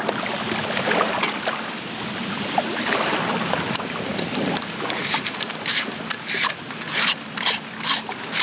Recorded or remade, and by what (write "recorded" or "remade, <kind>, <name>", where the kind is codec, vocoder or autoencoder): recorded